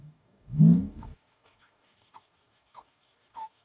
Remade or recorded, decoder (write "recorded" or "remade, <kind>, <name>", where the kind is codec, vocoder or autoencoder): remade, codec, DAC